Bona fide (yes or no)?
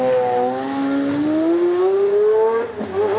yes